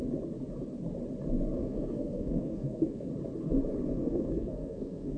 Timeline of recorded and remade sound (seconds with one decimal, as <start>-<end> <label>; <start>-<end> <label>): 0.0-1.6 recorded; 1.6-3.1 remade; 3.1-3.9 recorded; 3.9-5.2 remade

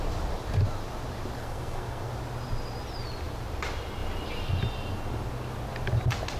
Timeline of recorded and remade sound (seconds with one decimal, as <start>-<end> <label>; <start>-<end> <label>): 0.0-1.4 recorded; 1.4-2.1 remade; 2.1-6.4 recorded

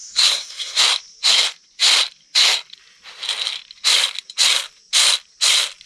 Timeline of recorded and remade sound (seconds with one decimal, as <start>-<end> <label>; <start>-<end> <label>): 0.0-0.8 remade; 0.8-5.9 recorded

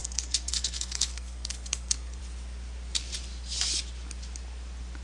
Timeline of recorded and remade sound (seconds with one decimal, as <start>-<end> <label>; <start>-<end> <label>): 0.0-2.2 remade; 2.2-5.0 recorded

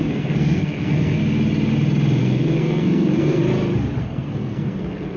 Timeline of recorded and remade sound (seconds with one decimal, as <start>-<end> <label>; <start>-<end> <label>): 0.0-1.2 remade; 1.2-2.2 recorded; 2.2-3.4 remade; 3.4-4.0 recorded; 4.0-5.2 remade

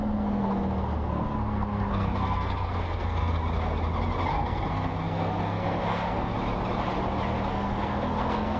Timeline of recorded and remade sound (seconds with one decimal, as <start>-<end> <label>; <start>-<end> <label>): 0.0-3.4 remade; 3.4-4.3 recorded; 4.3-6.3 remade; 6.3-7.5 recorded; 7.5-8.6 remade